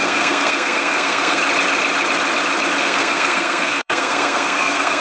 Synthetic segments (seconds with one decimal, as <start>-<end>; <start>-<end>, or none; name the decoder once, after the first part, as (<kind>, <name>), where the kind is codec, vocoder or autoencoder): 0.0-1.4 (codec, SNAC); 2.8-5.0